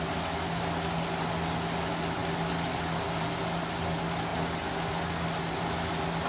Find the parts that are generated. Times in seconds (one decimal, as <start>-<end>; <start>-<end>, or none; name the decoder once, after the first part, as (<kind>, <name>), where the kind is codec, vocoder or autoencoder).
none